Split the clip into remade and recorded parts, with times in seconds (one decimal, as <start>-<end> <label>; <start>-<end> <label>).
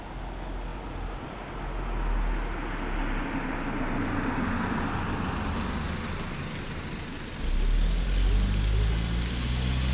0.0-9.9 recorded